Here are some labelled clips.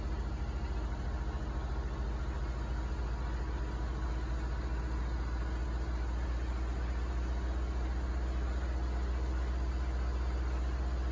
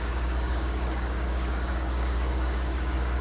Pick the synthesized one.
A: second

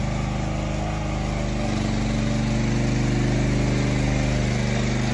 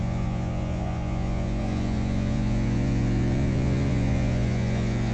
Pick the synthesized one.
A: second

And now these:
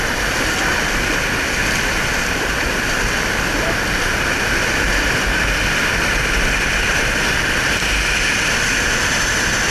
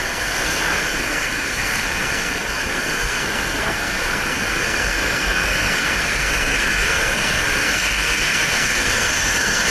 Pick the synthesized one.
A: second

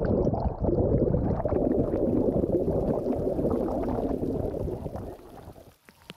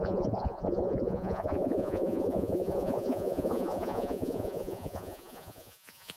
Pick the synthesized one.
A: second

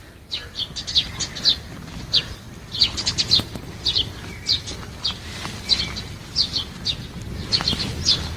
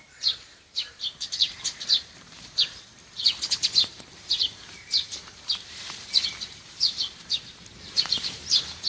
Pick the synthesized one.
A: second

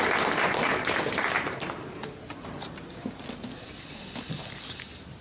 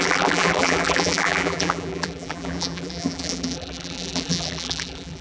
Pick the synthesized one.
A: second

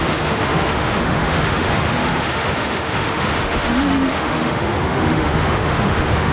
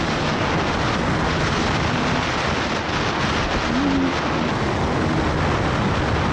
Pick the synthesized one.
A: first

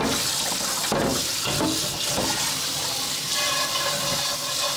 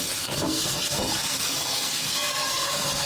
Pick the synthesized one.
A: second